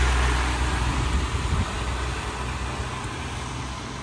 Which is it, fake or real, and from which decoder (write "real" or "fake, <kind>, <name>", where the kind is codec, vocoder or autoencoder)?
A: real